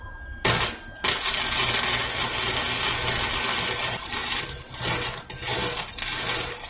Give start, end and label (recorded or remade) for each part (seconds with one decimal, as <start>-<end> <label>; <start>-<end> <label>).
0.0-6.7 recorded